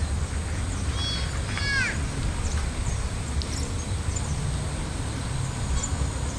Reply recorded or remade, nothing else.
recorded